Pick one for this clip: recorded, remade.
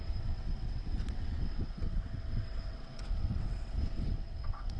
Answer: remade